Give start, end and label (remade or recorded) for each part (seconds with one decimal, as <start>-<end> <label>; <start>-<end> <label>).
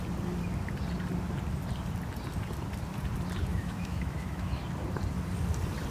0.0-3.5 recorded; 3.5-4.6 remade; 4.6-5.9 recorded